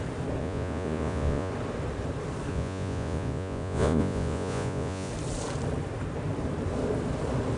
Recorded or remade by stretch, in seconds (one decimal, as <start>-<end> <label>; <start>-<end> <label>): 0.0-0.4 recorded; 0.4-1.5 remade; 1.5-2.5 recorded; 2.5-5.1 remade; 5.1-7.6 recorded